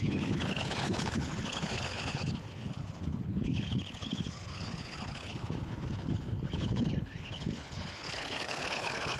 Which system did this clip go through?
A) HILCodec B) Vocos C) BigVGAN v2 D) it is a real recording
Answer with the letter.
A